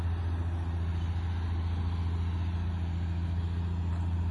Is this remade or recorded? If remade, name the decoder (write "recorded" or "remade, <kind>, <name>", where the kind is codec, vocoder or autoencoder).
recorded